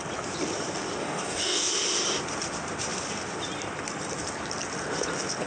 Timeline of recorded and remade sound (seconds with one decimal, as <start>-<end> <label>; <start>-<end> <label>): 0.0-1.0 recorded; 1.0-1.7 remade; 1.7-5.5 recorded